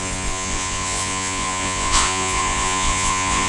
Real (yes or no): no